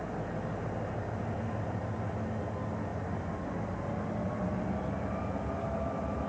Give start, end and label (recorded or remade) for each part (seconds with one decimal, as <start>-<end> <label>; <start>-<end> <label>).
0.0-6.3 recorded